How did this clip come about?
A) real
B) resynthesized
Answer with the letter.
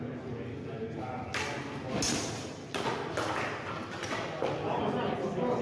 A